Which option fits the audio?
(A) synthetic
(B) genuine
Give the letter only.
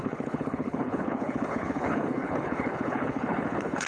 A